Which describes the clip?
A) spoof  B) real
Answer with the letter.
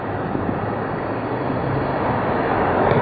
B